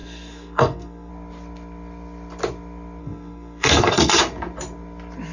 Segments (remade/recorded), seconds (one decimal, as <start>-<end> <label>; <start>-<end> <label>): 0.0-1.1 remade; 1.1-3.0 recorded; 3.0-4.2 remade; 4.2-5.3 recorded